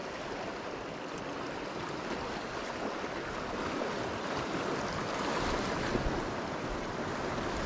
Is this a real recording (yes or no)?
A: yes